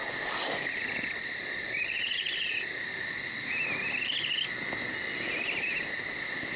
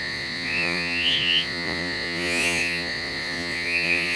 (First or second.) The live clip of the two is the first